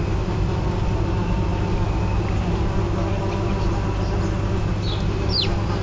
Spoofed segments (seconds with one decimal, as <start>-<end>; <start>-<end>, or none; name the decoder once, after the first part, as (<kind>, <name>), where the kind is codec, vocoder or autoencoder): none